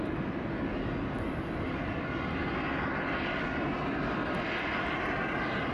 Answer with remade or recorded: recorded